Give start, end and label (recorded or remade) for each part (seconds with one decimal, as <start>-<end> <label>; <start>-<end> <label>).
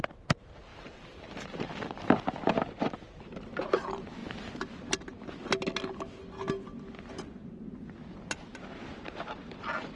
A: 0.0-0.7 recorded; 0.7-2.4 remade; 2.4-10.0 recorded